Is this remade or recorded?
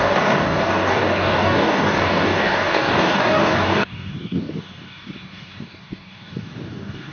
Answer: remade